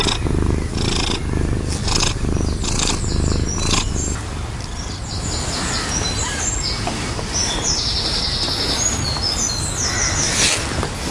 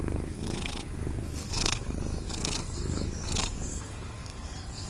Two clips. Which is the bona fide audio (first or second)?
first